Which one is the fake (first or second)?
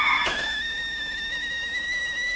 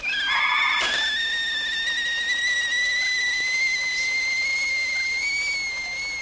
first